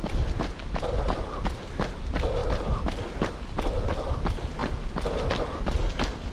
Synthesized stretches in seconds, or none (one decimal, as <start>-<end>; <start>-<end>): none